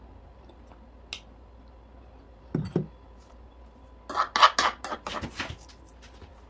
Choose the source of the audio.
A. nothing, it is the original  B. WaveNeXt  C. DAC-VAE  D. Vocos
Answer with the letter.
A